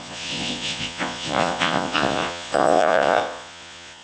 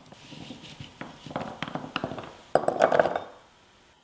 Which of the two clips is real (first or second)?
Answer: second